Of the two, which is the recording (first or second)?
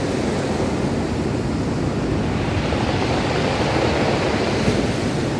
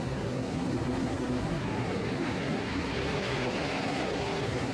first